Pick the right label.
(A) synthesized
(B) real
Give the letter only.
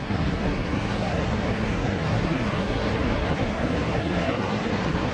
A